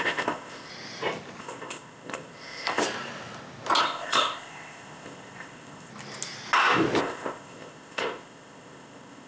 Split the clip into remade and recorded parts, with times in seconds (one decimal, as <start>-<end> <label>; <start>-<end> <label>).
0.0-0.7 remade; 0.7-1.4 recorded; 1.4-2.8 remade; 2.8-3.8 recorded; 3.8-5.9 remade; 5.9-7.0 recorded; 7.0-9.3 remade